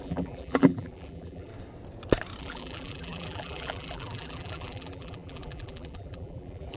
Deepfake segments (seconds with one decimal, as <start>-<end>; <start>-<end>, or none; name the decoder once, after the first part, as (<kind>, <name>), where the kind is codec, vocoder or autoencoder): 0.0-1.5 (vocoder, BigVGAN v2); 2.4-6.8